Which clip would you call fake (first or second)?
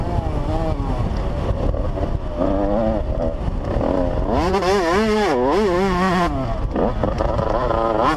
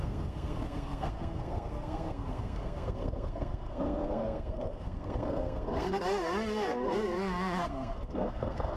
second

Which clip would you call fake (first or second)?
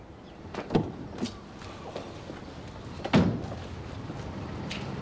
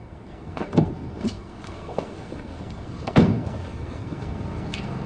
second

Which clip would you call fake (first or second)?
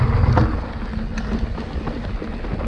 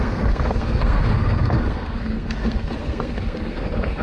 second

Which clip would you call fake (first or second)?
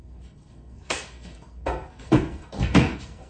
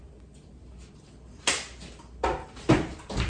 first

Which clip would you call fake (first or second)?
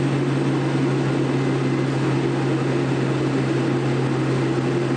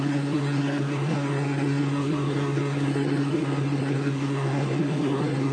second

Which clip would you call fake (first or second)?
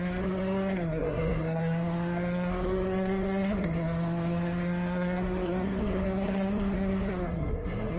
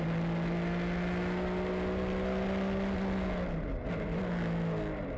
first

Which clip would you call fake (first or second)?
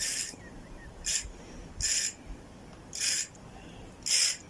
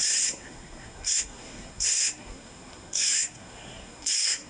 second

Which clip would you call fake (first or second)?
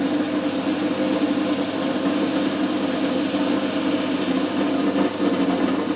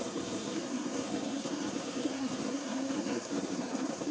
second